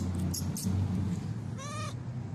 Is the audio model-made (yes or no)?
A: no